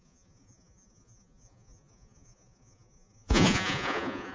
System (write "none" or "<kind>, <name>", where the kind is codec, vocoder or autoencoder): vocoder, Vocos